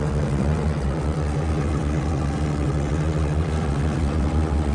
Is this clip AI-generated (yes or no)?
yes